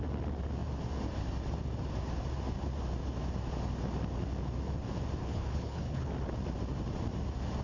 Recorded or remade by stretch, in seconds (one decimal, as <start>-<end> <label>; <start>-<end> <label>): 0.0-5.2 recorded; 5.2-6.1 remade; 6.1-7.6 recorded